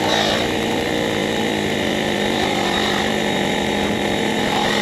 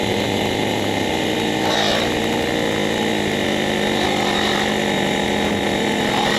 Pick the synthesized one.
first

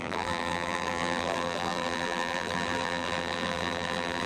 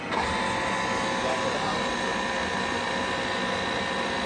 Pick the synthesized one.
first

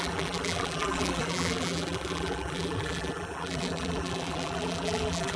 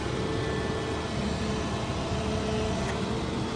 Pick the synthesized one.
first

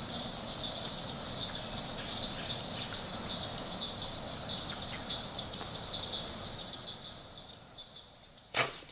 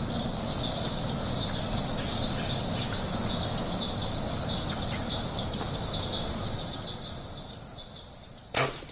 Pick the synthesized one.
first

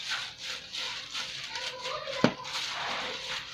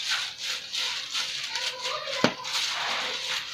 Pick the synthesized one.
first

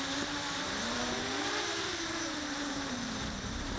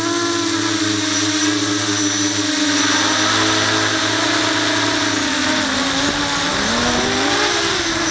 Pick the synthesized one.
first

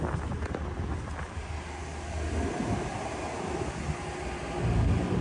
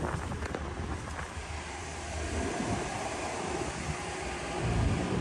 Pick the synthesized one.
second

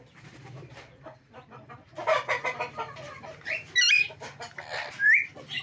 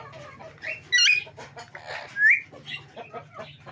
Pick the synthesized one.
first